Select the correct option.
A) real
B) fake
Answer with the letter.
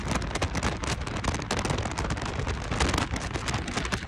A